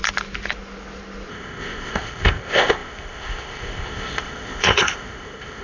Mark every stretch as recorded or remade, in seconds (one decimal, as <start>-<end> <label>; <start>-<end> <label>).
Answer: 0.0-1.3 recorded; 1.3-5.6 remade